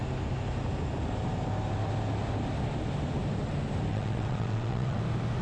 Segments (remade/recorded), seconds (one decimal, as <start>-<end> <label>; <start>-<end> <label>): 0.0-3.9 recorded; 3.9-5.0 remade; 5.0-5.4 recorded